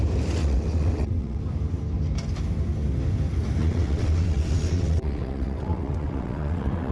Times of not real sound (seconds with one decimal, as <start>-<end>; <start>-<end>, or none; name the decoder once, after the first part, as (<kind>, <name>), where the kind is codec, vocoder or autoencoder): 0.4-1.4 (vocoder, WaveNeXt); 3.6-6.9